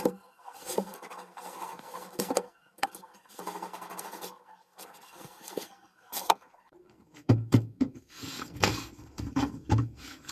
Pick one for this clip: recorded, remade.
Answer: remade